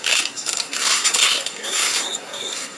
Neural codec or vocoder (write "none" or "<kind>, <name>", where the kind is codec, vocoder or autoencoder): codec, SNAC